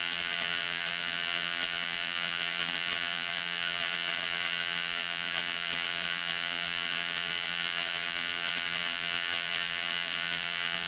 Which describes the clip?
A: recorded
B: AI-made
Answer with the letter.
B